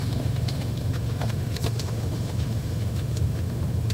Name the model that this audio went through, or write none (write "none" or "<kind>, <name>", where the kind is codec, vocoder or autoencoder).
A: autoencoder, DAC-VAE